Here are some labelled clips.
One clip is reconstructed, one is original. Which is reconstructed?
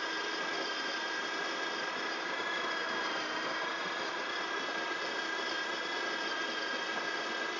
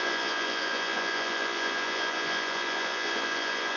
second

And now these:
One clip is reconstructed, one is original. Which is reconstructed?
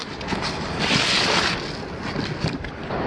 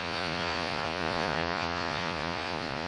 second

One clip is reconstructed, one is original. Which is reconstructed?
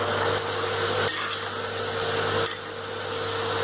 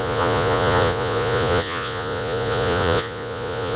second